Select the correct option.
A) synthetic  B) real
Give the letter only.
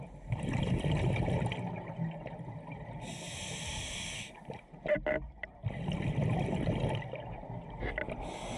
B